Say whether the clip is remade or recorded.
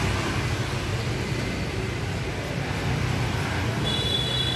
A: recorded